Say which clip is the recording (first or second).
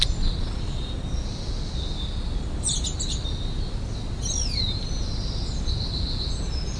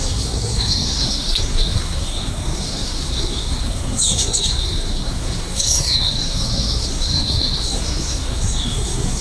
first